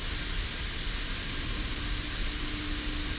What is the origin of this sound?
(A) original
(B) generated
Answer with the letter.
A